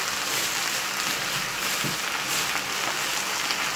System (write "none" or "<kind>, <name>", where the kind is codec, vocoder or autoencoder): none